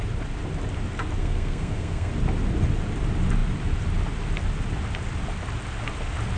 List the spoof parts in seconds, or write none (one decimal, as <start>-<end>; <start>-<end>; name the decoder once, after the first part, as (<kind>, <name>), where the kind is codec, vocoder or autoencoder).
1.2-2.1 (codec, SNAC)